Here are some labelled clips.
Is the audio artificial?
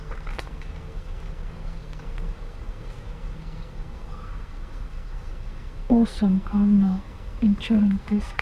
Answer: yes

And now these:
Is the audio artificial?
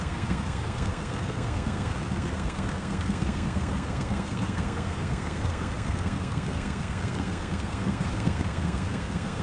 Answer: yes